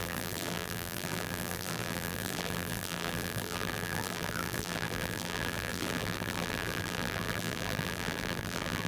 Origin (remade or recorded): remade